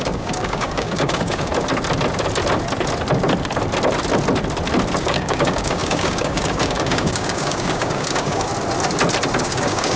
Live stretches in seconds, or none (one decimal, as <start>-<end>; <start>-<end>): 1.5-5.0; 8.5-9.4